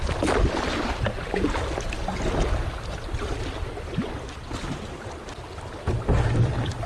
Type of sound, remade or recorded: recorded